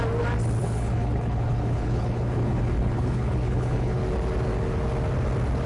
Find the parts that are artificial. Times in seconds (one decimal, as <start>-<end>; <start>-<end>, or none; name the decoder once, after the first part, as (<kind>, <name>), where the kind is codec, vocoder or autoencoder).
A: 0.6-4.0 (codec, HILCodec)